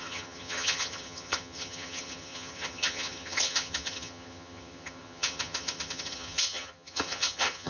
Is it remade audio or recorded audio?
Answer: remade